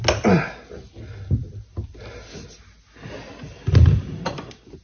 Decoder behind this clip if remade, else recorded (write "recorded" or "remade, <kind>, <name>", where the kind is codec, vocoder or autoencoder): recorded